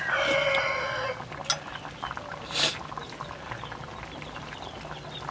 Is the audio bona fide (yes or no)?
yes